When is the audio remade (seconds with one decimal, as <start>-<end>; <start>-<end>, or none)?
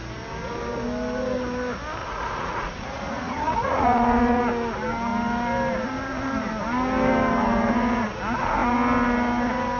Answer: 2.0-4.4